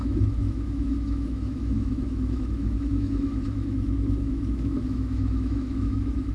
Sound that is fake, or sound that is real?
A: fake